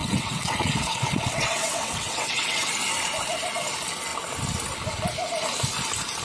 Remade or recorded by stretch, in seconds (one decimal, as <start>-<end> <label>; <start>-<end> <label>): 0.0-2.7 remade; 2.7-6.2 recorded